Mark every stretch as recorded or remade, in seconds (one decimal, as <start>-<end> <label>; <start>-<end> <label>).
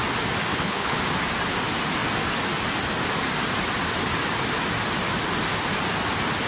0.0-0.5 recorded; 0.5-1.0 remade; 1.0-6.5 recorded